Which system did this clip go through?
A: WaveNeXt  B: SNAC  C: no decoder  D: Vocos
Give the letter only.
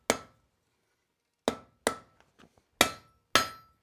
C